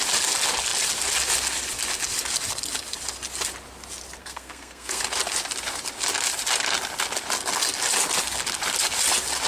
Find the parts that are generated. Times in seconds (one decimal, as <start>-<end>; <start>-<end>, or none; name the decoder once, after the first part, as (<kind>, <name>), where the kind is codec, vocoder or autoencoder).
4.2-5.0 (codec, SNAC)